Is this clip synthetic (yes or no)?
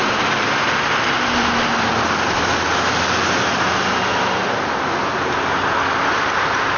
no